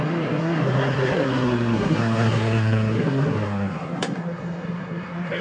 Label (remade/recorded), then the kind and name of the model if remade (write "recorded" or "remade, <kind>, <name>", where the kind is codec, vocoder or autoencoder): remade, codec, SNAC